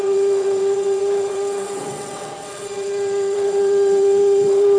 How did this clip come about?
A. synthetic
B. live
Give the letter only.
A